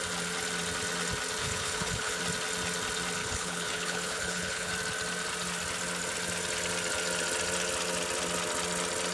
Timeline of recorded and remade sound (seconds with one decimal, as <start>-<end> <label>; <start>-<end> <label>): 0.0-1.4 recorded; 1.4-2.2 remade; 2.2-3.2 recorded; 3.2-4.7 remade; 4.7-9.1 recorded